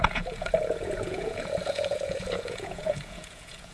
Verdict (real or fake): fake